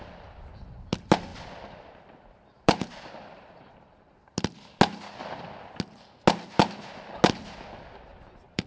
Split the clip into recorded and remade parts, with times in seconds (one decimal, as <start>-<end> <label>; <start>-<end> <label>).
0.0-1.3 recorded; 1.3-3.1 remade; 3.1-5.2 recorded; 5.2-5.8 remade; 5.8-8.1 recorded; 8.1-8.7 remade